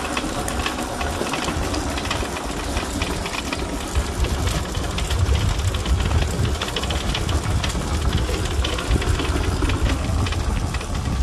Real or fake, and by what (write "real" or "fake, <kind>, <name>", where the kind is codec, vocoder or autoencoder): real